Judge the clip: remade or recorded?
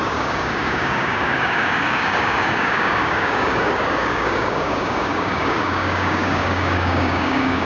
remade